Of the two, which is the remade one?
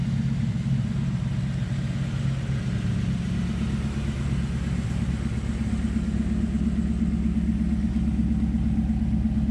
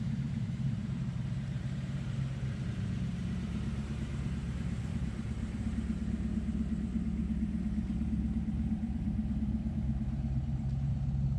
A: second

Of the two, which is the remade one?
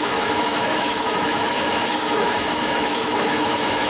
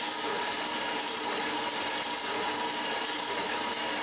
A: first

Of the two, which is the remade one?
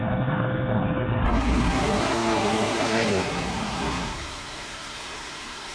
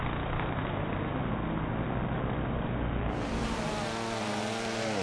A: first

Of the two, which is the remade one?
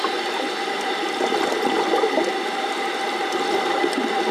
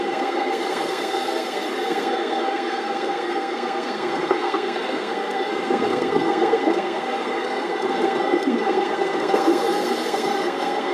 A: second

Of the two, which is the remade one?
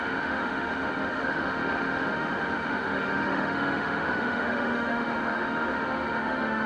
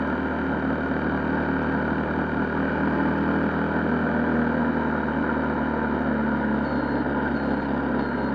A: first